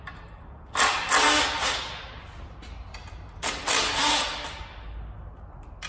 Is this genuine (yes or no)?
yes